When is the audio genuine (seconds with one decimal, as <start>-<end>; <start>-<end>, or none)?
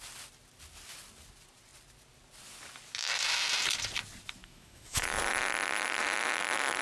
0.0-4.4; 5.2-6.8